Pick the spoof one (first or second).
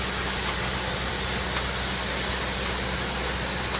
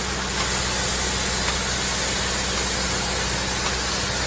first